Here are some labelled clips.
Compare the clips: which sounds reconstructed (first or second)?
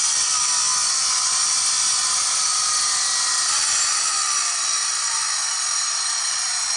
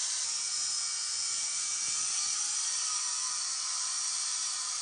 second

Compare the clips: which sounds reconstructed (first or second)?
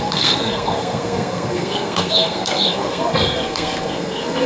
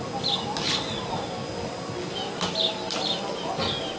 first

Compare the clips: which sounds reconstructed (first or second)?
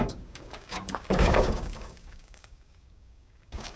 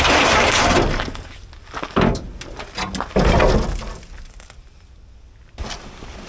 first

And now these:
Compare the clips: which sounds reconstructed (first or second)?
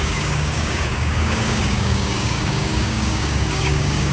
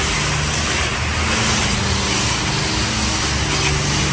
first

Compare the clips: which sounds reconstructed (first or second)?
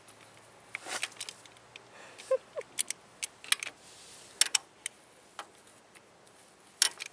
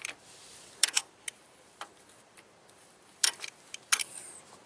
second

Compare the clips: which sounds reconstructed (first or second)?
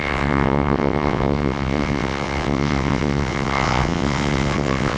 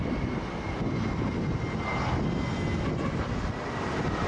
first